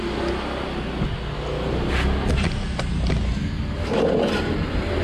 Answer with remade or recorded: recorded